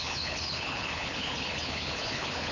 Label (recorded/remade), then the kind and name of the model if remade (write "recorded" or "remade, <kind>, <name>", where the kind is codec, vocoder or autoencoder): remade, codec, HILCodec